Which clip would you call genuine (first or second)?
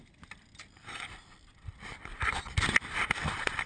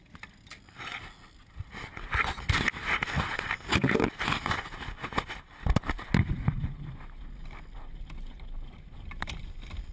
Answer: second